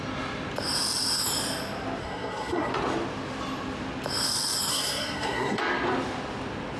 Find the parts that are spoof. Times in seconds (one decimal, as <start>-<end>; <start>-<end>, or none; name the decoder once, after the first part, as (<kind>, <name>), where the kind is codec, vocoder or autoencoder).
2.0-2.7 (codec, SNAC); 4.7-5.6